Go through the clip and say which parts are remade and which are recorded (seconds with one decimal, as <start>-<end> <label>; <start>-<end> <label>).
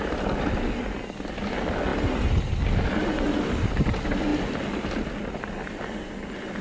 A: 0.0-6.6 recorded